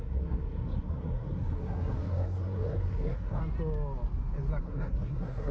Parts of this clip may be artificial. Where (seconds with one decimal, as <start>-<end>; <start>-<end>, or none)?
0.0-3.4; 4.6-5.5